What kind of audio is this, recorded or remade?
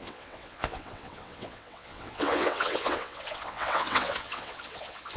remade